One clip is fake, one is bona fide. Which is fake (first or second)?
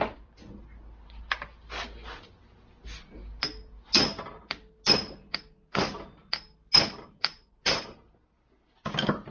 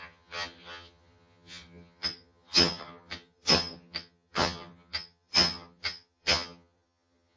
second